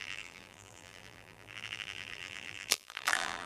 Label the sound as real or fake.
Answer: fake